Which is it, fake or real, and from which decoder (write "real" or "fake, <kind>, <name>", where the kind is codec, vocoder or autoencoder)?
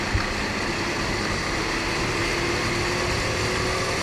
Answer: real